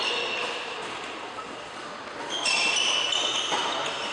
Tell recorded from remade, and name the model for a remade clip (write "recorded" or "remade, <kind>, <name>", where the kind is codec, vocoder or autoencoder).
recorded